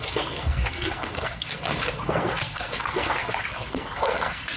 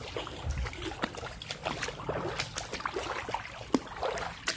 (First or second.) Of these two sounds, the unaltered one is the second